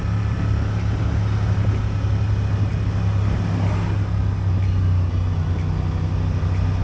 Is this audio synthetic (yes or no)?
no